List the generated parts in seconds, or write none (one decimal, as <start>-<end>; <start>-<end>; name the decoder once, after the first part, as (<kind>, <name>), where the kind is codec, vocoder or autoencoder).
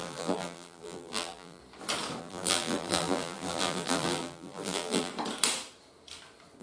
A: 0.0-1.6 (vocoder, BigVGAN v2); 2.2-5.1